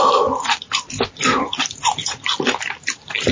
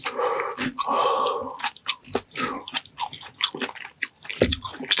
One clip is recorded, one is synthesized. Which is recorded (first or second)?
second